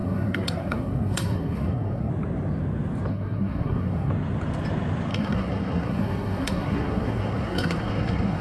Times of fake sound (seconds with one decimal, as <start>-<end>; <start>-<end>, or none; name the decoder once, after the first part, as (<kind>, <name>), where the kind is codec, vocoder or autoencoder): 0.0-2.1 (codec, SNAC); 3.1-4.1; 5.1-8.4